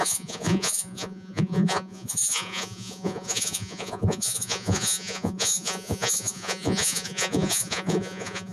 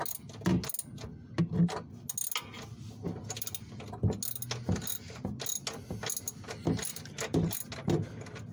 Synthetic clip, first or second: first